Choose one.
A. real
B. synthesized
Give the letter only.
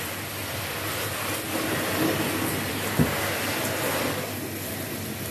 A